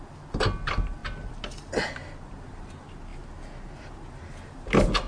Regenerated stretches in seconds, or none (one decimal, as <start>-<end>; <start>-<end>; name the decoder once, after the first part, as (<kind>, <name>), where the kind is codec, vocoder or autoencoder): none